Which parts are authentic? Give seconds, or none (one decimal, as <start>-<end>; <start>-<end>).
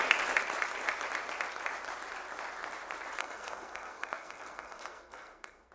0.0-3.2